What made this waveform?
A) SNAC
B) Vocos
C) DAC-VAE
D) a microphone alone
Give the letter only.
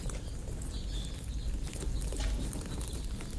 D